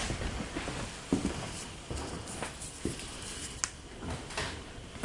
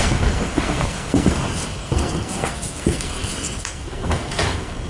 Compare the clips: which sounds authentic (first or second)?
first